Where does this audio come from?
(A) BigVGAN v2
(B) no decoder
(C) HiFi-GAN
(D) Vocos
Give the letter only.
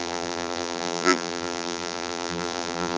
A